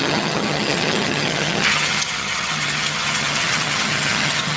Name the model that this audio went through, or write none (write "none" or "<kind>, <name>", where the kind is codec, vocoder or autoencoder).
vocoder, HiFi-GAN